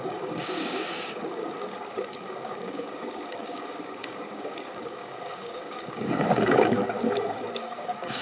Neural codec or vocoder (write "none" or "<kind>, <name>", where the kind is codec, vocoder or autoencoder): codec, DAC